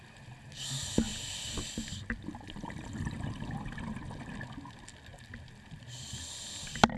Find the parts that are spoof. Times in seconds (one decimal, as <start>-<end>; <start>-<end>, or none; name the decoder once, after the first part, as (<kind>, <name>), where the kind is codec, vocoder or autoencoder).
none